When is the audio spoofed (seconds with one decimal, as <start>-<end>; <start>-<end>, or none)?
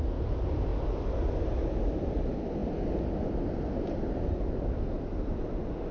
none